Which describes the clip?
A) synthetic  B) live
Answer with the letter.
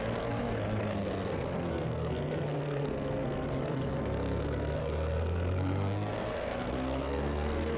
A